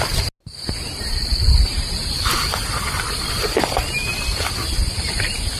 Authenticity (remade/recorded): recorded